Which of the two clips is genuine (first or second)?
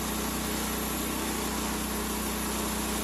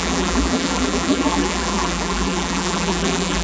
first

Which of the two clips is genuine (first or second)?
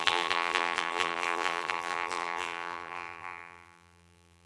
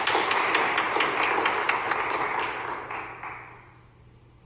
second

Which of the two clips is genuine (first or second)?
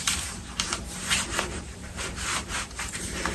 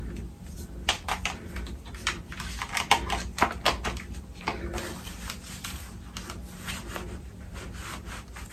second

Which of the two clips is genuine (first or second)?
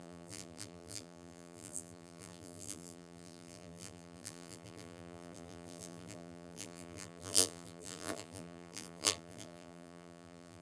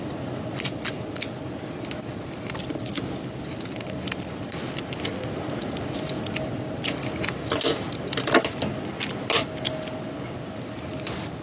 second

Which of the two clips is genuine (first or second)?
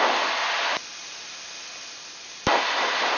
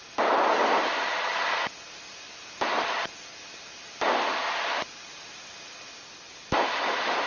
first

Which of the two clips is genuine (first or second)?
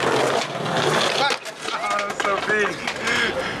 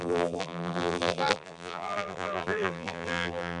first